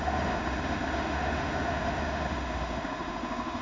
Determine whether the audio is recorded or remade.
remade